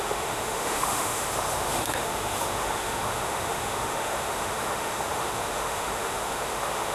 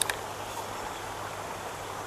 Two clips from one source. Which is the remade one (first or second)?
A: first